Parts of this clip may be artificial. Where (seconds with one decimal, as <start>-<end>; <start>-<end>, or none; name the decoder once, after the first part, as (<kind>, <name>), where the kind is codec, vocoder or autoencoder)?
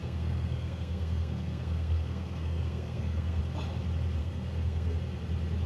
0.0-3.4 (codec, SNAC); 4.2-5.0